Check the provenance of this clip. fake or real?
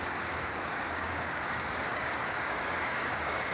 fake